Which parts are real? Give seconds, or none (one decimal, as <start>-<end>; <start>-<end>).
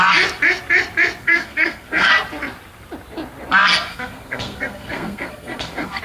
0.0-1.2; 2.1-3.9